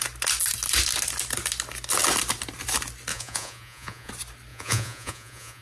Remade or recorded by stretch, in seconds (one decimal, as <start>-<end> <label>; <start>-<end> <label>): 0.0-3.1 recorded; 3.1-4.1 remade; 4.1-4.5 recorded; 4.5-5.6 remade